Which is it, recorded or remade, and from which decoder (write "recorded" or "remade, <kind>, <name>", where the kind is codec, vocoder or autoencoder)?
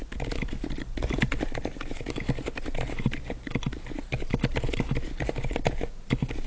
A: recorded